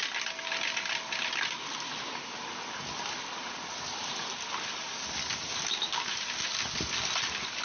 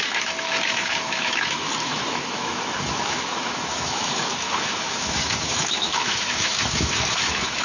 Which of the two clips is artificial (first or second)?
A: second